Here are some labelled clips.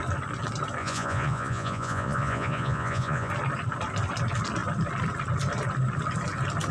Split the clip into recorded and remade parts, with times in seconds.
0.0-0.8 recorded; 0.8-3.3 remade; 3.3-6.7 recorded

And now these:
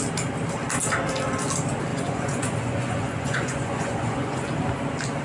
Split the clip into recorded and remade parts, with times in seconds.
0.0-1.9 recorded; 1.9-4.5 remade; 4.5-5.2 recorded

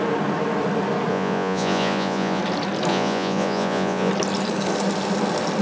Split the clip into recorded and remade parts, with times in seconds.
0.0-1.1 recorded; 1.1-2.4 remade; 2.4-2.9 recorded; 2.9-4.1 remade; 4.1-5.6 recorded

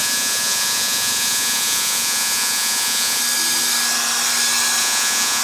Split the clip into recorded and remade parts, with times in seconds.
0.0-3.2 remade; 3.2-4.8 recorded; 4.8-5.4 remade

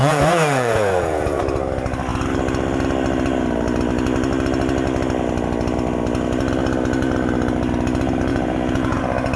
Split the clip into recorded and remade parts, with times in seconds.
0.0-1.4 remade; 1.4-8.3 recorded; 8.3-9.0 remade; 9.0-9.4 recorded

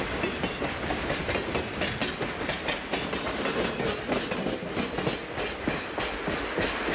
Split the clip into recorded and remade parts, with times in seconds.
0.0-6.9 recorded

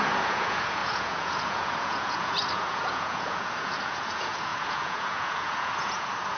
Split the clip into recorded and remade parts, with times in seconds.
0.0-6.4 remade

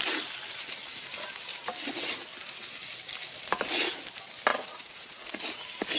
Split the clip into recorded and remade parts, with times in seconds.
0.0-4.5 recorded; 4.5-5.4 remade; 5.4-6.0 recorded